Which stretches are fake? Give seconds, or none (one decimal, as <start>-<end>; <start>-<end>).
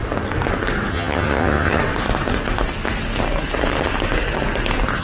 0.9-1.8